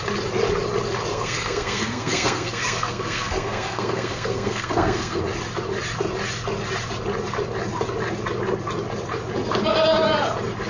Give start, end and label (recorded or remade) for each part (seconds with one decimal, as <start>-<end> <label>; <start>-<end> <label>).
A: 0.0-1.1 recorded; 1.1-5.2 remade; 5.2-10.7 recorded